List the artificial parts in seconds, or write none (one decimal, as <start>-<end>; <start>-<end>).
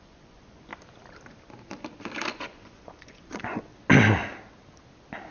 0.0-0.7; 2.3-3.7